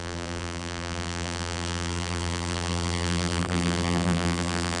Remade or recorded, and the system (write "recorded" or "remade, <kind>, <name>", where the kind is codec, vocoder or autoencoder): remade, vocoder, BigVGAN v2